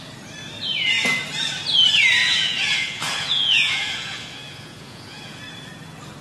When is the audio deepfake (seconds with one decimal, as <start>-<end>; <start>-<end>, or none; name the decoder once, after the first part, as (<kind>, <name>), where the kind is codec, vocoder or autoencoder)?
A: 2.2-5.4 (vocoder, Vocos)